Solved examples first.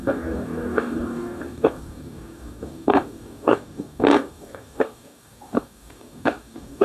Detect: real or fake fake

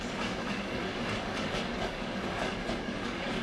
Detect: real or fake fake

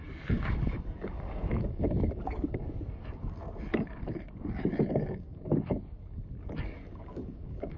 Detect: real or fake fake